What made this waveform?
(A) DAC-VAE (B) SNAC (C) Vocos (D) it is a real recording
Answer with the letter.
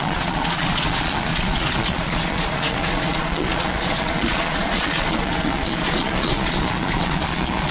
C